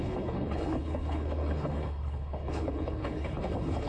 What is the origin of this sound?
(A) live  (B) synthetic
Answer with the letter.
B